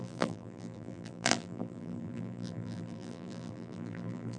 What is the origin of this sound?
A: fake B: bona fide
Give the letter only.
A